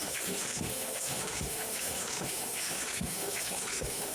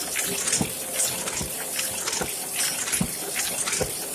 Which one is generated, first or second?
first